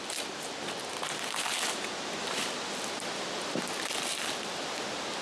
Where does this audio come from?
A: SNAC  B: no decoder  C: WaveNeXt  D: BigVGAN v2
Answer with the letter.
B